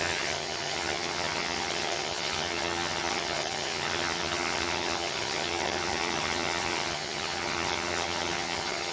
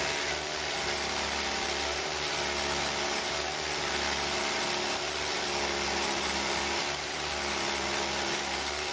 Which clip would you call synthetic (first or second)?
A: first